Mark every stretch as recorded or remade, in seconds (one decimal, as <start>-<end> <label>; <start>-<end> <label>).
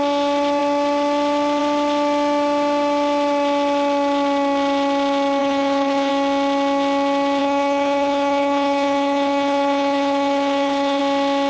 0.0-5.4 recorded; 5.4-6.1 remade; 6.1-7.4 recorded; 7.4-11.0 remade; 11.0-11.5 recorded